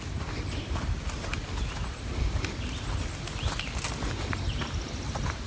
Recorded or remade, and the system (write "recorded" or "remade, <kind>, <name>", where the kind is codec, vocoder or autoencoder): recorded